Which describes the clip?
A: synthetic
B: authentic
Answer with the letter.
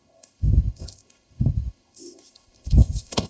A